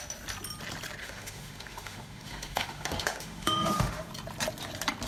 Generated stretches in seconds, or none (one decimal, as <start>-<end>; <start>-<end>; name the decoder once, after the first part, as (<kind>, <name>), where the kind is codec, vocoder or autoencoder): 1.0-4.1 (autoencoder, DAC-VAE)